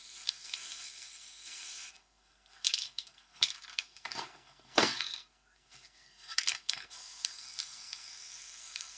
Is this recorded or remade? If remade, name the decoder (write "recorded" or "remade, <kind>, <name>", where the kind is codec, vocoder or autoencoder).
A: remade, codec, SNAC